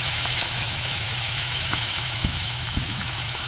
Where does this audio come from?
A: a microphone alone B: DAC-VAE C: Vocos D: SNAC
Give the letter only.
B